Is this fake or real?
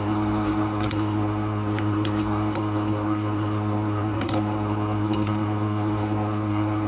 fake